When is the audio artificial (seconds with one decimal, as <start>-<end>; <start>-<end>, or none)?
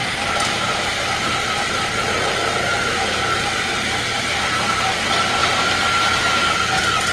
0.0-1.4; 5.4-6.4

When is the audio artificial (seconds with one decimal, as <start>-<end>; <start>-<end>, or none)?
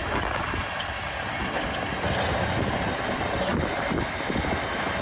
0.0-0.6; 2.0-5.0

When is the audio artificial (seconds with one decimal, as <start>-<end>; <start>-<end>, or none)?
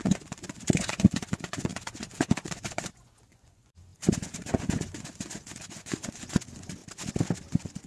0.0-6.8; 7.5-7.9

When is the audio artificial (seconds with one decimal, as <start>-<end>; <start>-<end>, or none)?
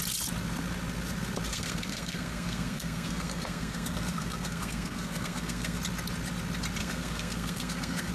1.5-5.8; 6.8-8.1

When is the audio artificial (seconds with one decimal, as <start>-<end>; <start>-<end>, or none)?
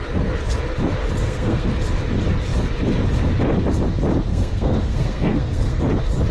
1.2-1.7; 4.3-5.8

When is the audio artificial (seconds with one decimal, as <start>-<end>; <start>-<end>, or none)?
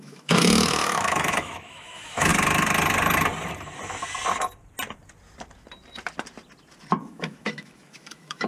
0.0-2.3; 7.0-8.5